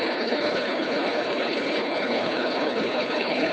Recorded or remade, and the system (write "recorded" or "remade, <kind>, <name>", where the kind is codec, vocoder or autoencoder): remade, codec, HILCodec